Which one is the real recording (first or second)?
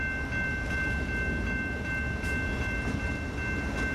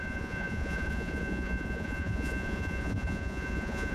first